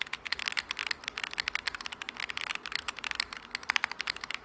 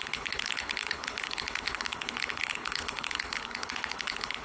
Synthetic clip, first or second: second